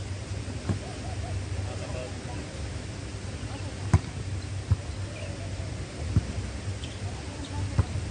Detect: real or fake real